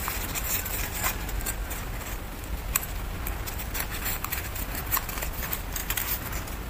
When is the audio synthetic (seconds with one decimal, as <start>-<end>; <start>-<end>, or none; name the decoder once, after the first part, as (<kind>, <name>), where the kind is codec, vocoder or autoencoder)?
0.0-0.8 (vocoder, BigVGAN v2); 4.1-4.6; 5.8-6.3